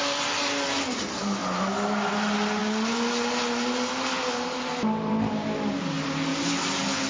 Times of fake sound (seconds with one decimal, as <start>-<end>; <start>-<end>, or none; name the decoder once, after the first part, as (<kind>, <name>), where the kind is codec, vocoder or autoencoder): none